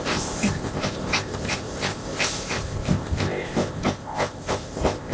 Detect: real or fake fake